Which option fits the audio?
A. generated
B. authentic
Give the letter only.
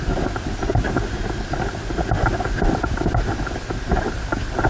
B